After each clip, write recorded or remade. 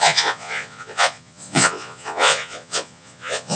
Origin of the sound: remade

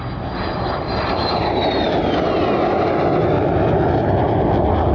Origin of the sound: recorded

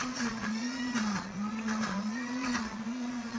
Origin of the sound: remade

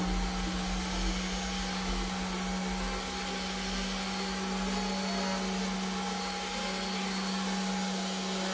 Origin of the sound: recorded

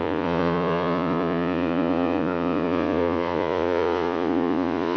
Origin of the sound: remade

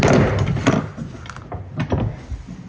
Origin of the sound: recorded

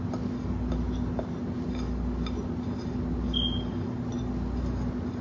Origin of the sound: recorded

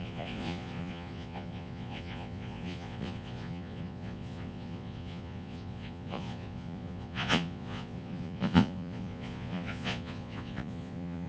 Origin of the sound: remade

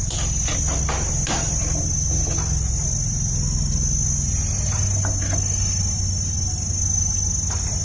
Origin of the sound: recorded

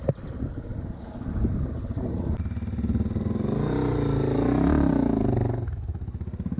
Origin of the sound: recorded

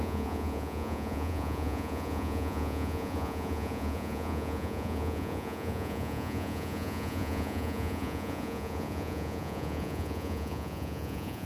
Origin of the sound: remade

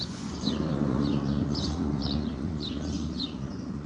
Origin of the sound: remade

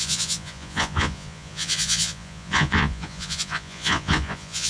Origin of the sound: remade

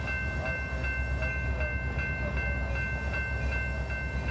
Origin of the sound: recorded